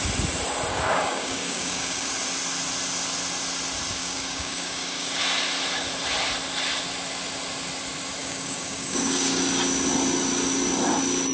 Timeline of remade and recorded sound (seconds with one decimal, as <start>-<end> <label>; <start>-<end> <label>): 0.0-0.7 recorded; 0.7-2.1 remade; 2.1-4.0 recorded; 4.0-5.2 remade; 5.2-8.2 recorded; 8.2-9.4 remade; 9.4-11.3 recorded